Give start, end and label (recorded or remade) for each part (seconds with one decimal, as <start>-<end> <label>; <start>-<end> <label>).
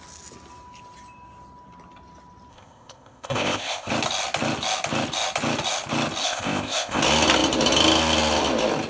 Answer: 0.0-2.5 recorded; 2.5-3.9 remade; 3.9-6.2 recorded; 6.2-7.0 remade; 7.0-8.9 recorded